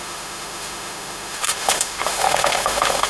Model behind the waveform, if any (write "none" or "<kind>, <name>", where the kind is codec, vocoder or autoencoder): autoencoder, DAC-VAE